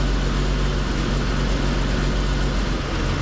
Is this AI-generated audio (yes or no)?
no